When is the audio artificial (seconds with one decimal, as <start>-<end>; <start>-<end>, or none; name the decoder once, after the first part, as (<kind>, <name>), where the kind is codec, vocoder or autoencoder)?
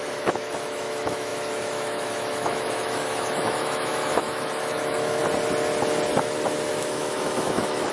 0.0-5.2 (autoencoder, DAC-VAE); 6.7-7.9